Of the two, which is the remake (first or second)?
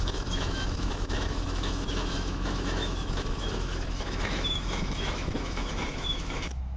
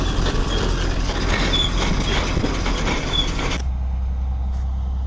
first